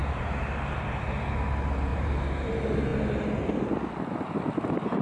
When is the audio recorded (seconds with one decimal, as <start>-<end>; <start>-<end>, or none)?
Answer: 0.8-1.9; 2.5-5.0